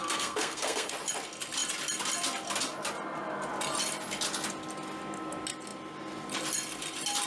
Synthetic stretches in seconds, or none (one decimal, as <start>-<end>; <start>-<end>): 0.0-0.9